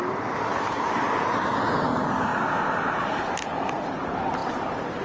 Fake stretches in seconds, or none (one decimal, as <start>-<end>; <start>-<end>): none

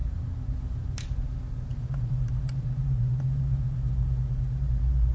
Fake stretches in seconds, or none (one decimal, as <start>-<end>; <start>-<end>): 0.0-1.0; 1.7-5.1